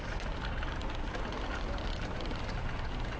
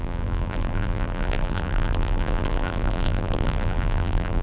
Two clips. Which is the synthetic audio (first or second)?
second